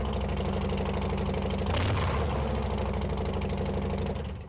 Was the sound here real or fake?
real